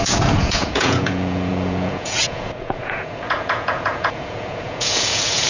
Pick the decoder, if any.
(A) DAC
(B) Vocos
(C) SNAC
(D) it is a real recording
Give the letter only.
B